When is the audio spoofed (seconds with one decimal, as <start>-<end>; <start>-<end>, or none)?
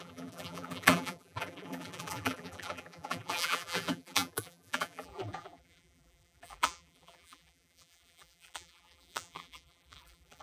0.0-10.4